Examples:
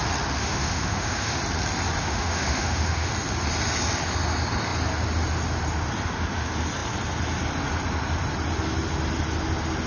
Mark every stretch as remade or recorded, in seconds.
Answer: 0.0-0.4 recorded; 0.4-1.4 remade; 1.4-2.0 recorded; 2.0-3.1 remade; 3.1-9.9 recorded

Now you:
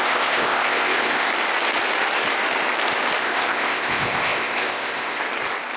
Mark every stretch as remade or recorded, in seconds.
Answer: 0.0-1.3 remade; 1.3-3.2 recorded; 3.2-5.2 remade; 5.2-5.8 recorded

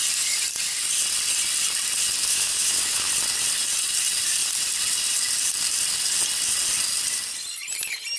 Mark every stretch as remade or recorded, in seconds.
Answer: 0.0-2.3 recorded; 2.3-3.1 remade; 3.1-8.2 recorded

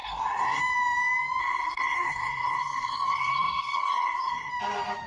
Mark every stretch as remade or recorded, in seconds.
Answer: 0.0-0.6 remade; 0.6-1.4 recorded; 1.4-4.5 remade; 4.5-5.1 recorded

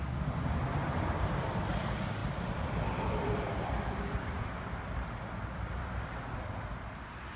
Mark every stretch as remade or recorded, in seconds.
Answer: 0.0-2.2 recorded; 2.2-6.2 remade; 6.2-7.4 recorded

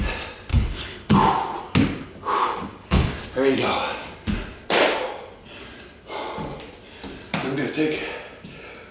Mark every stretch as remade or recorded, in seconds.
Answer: 0.0-0.5 recorded; 0.5-1.1 remade; 1.1-2.4 recorded; 2.4-3.1 remade; 3.1-8.9 recorded